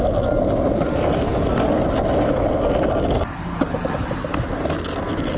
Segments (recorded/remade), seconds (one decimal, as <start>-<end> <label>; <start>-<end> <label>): 0.0-5.4 recorded